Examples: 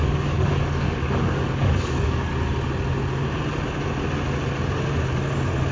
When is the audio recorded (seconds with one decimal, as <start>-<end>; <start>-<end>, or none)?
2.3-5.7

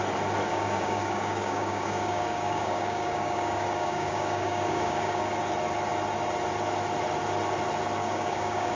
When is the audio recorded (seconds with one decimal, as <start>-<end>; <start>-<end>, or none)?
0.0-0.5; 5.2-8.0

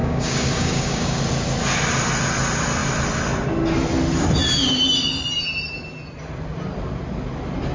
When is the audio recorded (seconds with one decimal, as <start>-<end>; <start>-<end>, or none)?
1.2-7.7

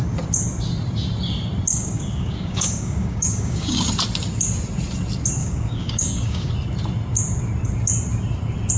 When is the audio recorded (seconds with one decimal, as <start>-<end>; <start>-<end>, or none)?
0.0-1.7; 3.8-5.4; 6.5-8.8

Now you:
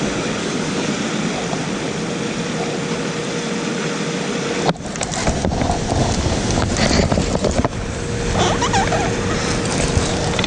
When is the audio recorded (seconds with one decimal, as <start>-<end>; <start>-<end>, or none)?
0.0-0.4; 0.9-6.0; 6.7-10.5

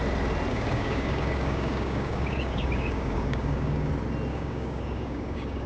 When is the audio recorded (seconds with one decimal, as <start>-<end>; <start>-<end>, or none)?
0.0-0.5; 3.9-4.3

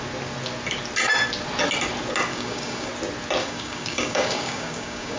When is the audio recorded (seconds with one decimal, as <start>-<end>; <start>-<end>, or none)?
0.0-2.3; 2.9-3.4

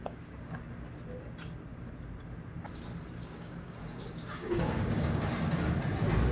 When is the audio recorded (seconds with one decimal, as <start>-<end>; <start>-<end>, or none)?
0.6-3.2; 5.3-6.3